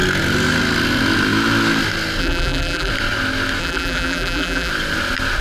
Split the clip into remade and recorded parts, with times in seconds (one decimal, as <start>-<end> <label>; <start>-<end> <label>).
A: 0.0-2.2 recorded; 2.2-2.9 remade; 2.9-3.6 recorded; 3.6-4.7 remade; 4.7-5.4 recorded